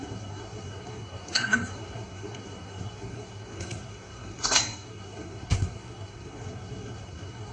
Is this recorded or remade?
remade